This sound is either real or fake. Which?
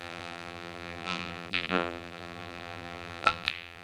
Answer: fake